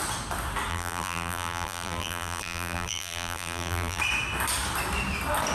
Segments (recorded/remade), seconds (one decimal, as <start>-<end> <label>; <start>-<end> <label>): 0.0-0.7 recorded; 0.7-4.0 remade; 4.0-5.5 recorded

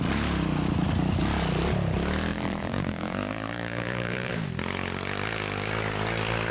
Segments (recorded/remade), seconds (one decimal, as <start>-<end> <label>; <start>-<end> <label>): 0.0-2.3 recorded; 2.3-4.3 remade; 4.3-6.5 recorded

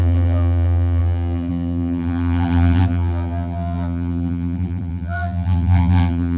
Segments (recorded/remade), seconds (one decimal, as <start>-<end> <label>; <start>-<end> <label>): 0.0-6.4 remade

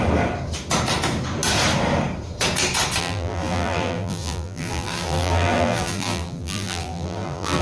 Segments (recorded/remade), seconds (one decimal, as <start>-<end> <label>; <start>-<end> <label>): 0.0-3.0 recorded; 3.0-7.6 remade

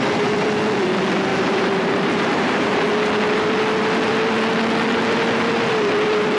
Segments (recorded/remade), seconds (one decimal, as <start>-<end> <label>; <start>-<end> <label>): 0.0-1.3 recorded; 1.3-2.7 remade; 2.7-6.4 recorded

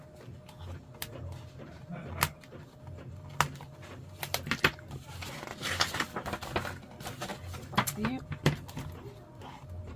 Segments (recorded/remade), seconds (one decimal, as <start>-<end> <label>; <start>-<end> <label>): 0.0-10.0 recorded

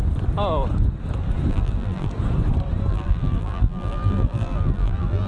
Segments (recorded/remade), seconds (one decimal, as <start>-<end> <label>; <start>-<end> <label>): 0.0-1.5 recorded; 1.5-2.1 remade; 2.1-2.9 recorded; 2.9-5.3 remade